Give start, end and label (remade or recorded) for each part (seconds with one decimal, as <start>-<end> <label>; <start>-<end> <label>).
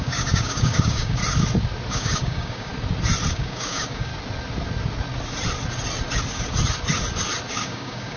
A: 0.0-1.2 remade; 1.2-1.9 recorded; 1.9-2.7 remade; 2.7-3.3 recorded; 3.3-4.1 remade; 4.1-7.5 recorded; 7.5-8.2 remade